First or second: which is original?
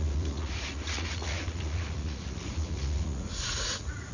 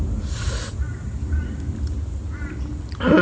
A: second